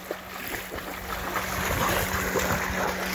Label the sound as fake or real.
real